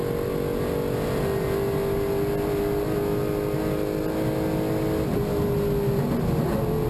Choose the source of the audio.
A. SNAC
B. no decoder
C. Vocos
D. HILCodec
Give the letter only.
B